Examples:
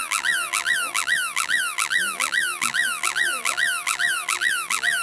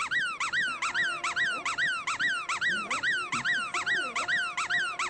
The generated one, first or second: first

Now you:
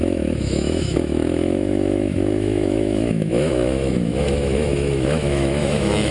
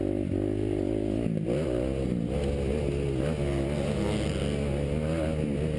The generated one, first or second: first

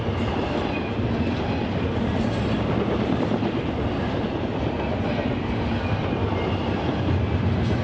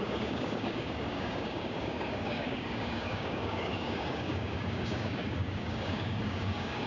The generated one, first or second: second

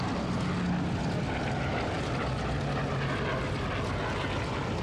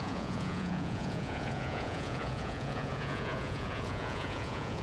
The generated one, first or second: second